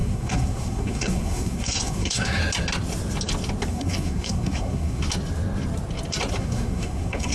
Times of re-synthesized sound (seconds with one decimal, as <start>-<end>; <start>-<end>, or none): 0.0-2.4; 3.7-5.0; 6.4-7.3